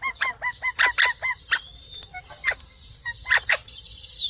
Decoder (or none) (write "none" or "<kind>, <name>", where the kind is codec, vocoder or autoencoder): none